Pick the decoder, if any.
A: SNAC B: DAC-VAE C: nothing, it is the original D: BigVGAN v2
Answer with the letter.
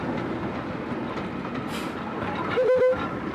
C